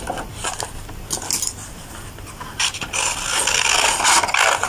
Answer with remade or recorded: recorded